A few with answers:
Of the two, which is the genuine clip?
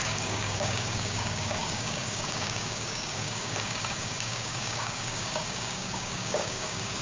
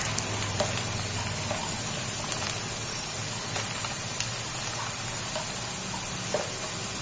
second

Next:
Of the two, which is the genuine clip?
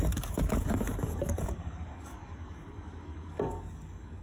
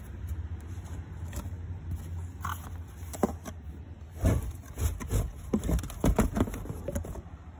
second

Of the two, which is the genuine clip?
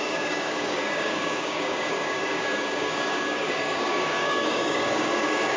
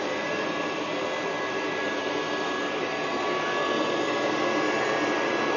second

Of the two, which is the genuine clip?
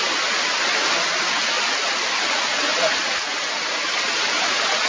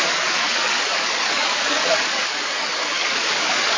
first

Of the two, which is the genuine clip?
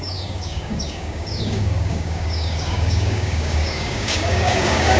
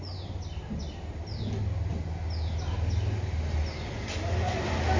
second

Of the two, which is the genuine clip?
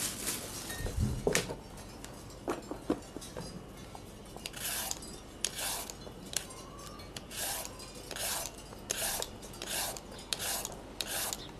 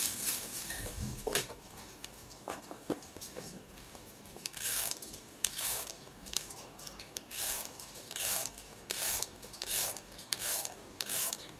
first